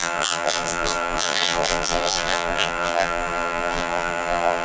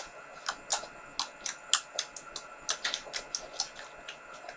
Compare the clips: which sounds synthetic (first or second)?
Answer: first